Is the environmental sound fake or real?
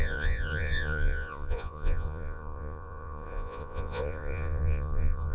fake